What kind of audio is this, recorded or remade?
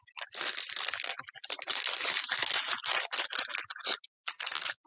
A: recorded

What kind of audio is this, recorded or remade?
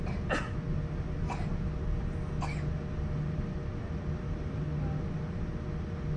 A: recorded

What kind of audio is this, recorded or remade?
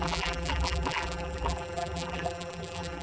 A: remade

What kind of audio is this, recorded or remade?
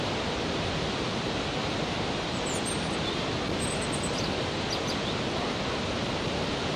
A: recorded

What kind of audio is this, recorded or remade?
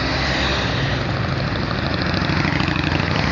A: recorded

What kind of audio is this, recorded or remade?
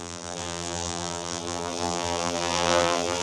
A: remade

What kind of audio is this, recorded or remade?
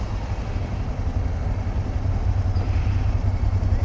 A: recorded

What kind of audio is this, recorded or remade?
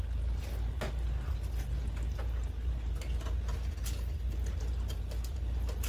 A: recorded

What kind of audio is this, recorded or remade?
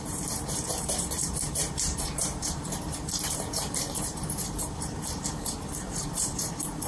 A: remade